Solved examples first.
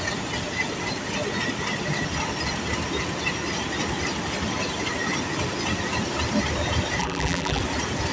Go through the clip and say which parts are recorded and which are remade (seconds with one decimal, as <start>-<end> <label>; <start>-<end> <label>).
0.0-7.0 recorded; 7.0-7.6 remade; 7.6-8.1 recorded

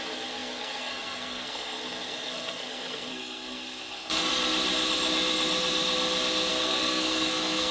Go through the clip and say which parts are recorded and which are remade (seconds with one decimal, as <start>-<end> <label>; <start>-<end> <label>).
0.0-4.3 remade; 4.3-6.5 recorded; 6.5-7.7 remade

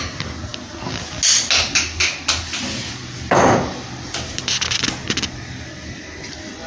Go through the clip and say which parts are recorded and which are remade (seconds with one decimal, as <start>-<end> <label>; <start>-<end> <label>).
0.0-6.7 recorded

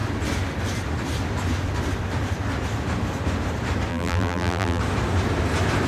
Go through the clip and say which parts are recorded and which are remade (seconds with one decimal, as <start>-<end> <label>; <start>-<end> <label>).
0.0-3.9 recorded; 3.9-4.8 remade; 4.8-5.9 recorded

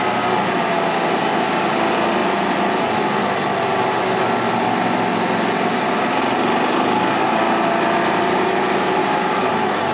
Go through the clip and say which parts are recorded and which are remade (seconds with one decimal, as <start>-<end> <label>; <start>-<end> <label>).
0.0-9.0 recorded; 9.0-9.5 remade; 9.5-9.9 recorded

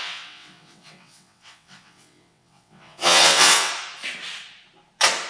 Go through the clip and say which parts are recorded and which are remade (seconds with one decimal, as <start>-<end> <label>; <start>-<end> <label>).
0.0-3.7 remade; 3.7-5.3 recorded

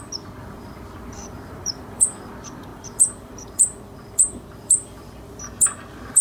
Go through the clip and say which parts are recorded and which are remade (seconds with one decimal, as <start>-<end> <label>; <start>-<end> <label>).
0.0-0.4 recorded; 0.4-2.3 remade; 2.3-2.7 recorded; 2.7-5.3 remade; 5.3-6.2 recorded